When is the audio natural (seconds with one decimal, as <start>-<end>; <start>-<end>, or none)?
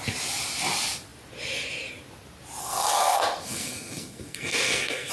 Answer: 0.0-2.6